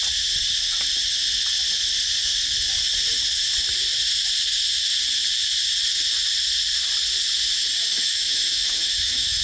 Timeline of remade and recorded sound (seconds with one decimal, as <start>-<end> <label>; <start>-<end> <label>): 0.0-7.9 recorded; 7.9-9.4 remade